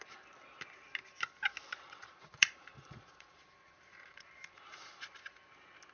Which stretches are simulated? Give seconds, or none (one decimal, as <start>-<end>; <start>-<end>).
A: 1.7-5.2